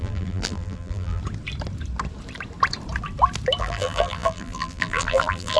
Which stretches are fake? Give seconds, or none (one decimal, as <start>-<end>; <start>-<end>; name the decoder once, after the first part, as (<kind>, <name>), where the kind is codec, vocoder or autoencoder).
0.0-1.2 (vocoder, BigVGAN v2); 3.6-5.6